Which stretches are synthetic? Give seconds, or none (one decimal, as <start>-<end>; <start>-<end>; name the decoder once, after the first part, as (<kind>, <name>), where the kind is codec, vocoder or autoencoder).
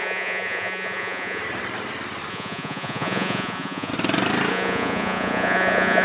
0.0-1.4 (vocoder, Vocos); 2.3-3.9; 4.5-6.0